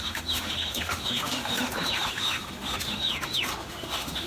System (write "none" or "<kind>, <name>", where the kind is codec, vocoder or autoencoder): autoencoder, DAC-VAE